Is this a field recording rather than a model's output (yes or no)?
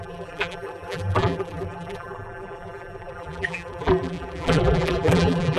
no